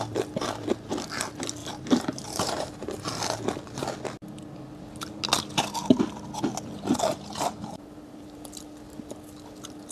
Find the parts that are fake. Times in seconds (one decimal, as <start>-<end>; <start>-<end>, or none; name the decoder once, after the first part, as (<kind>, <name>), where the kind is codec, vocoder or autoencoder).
1.6-2.7 (vocoder, BigVGAN v2); 7.1-8.6